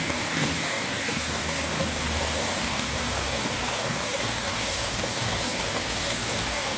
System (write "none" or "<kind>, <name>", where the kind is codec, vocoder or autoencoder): codec, DAC